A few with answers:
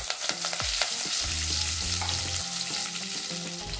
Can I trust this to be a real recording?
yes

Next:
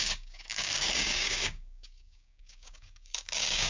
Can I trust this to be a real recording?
no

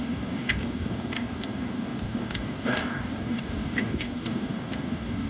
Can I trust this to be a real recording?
no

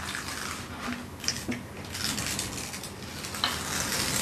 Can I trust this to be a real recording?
yes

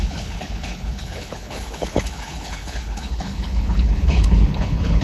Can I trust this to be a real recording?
no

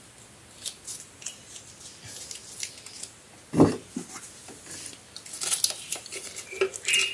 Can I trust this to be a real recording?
yes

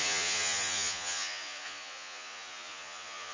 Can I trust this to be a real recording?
no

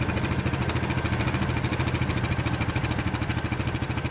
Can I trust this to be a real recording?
yes